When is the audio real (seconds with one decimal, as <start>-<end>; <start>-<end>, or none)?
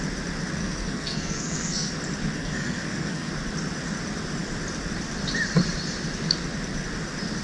0.0-0.6; 1.9-2.4; 3.3-7.4